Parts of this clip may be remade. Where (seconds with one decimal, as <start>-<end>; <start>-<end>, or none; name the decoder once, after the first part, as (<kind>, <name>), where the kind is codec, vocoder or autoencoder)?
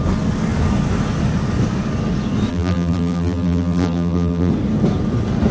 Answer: 2.5-4.5 (vocoder, BigVGAN v2)